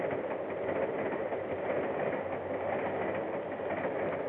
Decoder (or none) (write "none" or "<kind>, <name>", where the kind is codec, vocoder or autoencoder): none